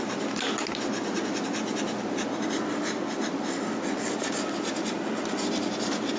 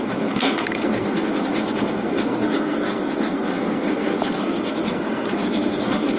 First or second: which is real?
first